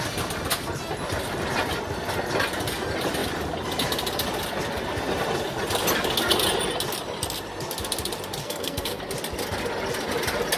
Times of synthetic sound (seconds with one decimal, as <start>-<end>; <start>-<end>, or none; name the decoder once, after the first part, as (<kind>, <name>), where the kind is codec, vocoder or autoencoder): 8.4-9.0 (codec, SNAC)